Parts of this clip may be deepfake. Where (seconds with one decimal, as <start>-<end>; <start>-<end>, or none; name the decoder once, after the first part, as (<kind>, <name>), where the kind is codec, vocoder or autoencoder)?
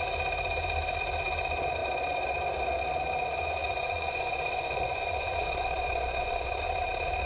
3.6-6.6 (vocoder, Vocos)